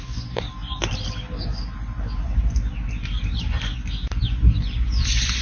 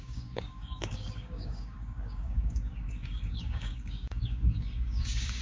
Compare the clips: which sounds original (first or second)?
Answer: first